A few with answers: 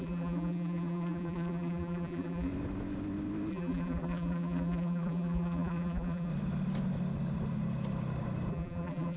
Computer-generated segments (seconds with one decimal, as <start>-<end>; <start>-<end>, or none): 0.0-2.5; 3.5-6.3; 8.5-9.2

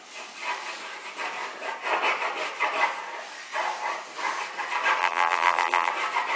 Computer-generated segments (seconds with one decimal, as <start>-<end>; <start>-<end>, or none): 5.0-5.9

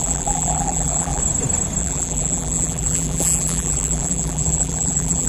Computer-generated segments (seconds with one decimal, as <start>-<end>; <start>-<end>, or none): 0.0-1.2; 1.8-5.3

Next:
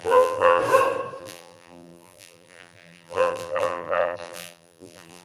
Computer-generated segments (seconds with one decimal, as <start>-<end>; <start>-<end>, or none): 0.0-0.6; 1.2-5.2

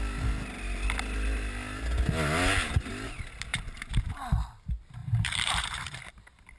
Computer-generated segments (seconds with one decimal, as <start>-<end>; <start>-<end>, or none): 3.5-4.0; 5.0-6.0

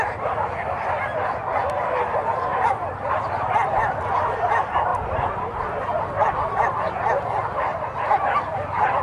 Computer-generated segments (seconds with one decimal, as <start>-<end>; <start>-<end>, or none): 0.0-2.5; 3.1-7.7